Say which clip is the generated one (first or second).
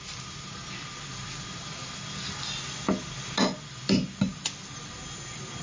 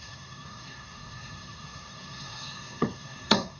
second